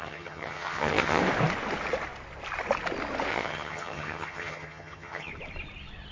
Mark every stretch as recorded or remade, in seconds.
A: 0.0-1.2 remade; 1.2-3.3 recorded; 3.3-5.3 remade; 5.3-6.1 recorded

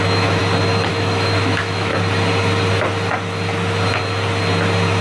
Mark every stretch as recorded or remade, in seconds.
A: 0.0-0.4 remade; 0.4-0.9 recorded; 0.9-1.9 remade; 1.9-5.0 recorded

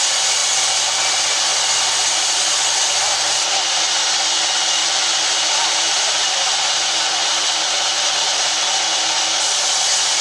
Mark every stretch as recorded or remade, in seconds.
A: 0.0-4.8 recorded; 4.8-6.4 remade; 6.4-10.2 recorded

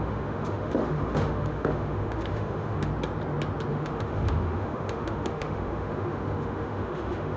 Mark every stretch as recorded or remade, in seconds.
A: 0.0-2.9 remade; 2.9-3.7 recorded; 3.7-7.4 remade

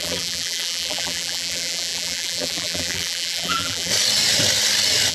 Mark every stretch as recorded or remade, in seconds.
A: 0.0-3.9 remade; 3.9-5.1 recorded

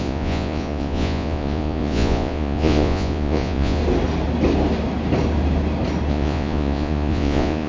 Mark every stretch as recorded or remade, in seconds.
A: 0.0-3.8 remade; 3.8-6.1 recorded; 6.1-7.7 remade

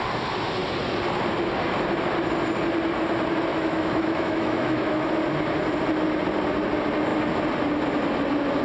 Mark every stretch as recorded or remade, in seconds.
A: 0.0-3.5 recorded; 3.5-5.1 remade; 5.1-8.6 recorded